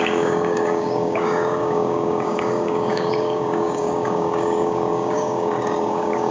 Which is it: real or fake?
fake